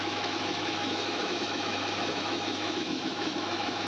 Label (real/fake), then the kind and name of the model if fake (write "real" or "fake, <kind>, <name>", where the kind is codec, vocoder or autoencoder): fake, autoencoder, DAC-VAE